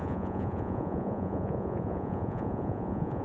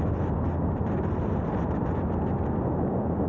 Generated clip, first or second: first